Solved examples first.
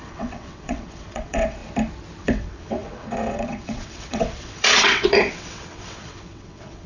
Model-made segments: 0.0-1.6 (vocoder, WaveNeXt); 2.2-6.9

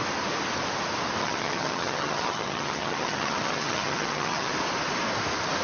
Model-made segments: 1.2-4.5 (vocoder, HiFi-GAN)

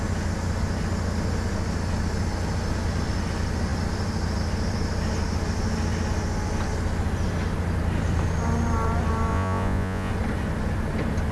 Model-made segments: 9.3-10.1 (vocoder, Vocos)

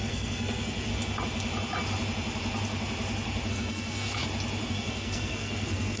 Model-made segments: 0.0-0.9 (codec, SNAC); 3.5-4.2; 4.7-6.0